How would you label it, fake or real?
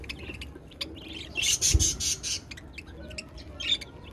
real